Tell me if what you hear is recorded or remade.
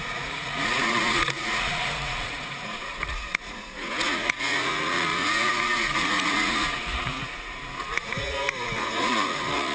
remade